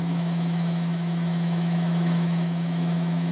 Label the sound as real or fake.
fake